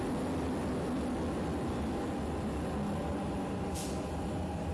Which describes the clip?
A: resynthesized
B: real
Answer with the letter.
B